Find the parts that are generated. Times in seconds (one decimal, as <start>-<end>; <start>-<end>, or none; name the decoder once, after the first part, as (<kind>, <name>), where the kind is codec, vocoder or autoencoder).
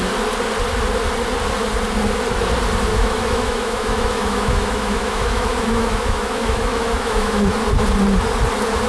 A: 2.9-7.6 (autoencoder, DAC-VAE)